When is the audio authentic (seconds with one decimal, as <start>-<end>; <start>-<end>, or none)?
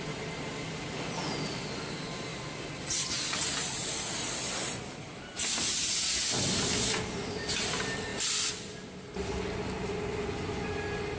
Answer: 0.0-11.2